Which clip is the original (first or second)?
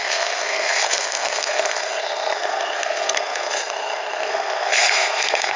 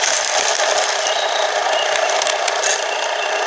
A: second